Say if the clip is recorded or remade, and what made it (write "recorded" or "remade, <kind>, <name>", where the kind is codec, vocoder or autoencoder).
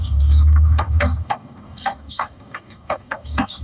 remade, codec, DAC